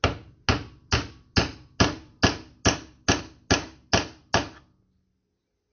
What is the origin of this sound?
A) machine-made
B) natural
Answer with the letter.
B